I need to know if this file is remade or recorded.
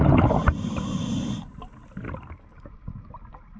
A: recorded